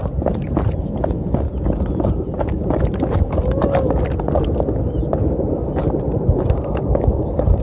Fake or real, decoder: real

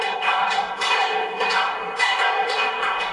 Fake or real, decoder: fake, codec, SNAC